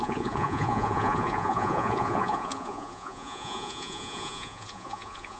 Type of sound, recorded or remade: remade